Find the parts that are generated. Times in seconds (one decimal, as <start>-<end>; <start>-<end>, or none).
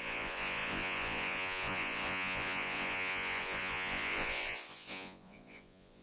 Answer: 0.0-6.0